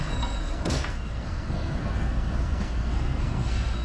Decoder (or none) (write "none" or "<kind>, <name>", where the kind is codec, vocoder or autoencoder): codec, SNAC